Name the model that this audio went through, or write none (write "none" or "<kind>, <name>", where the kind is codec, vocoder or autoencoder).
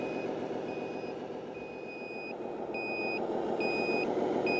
none